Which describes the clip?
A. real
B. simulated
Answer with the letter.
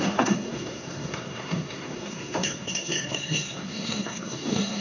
B